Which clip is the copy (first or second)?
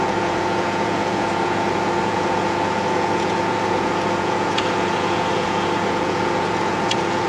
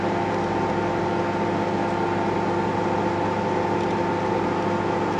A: first